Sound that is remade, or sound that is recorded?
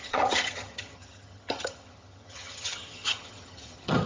remade